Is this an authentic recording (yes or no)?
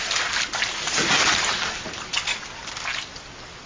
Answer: yes